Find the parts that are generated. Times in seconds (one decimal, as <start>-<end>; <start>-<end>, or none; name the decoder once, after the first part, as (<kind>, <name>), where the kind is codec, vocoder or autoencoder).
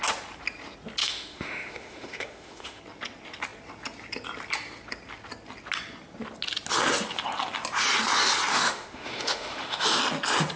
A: 1.0-2.8 (autoencoder, DAC-VAE); 8.5-10.0